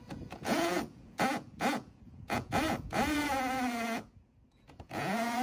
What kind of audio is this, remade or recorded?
remade